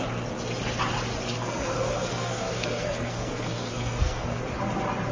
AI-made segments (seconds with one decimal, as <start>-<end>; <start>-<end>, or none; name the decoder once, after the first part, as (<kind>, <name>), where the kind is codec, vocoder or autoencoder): 1.3-4.4 (codec, SNAC)